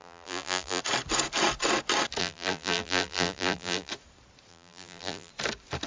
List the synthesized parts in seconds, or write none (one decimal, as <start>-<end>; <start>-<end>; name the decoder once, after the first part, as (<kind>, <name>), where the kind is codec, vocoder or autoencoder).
0.0-0.8 (vocoder, BigVGAN v2); 2.2-3.9; 4.5-5.3